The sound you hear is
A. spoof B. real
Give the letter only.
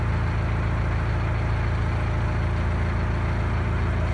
B